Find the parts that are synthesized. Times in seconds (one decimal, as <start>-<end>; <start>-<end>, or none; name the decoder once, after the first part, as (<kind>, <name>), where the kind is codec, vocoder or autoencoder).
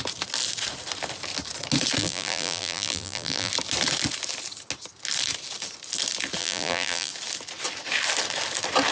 2.0-3.5 (vocoder, BigVGAN v2); 6.4-7.1